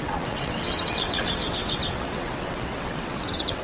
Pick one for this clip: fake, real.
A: fake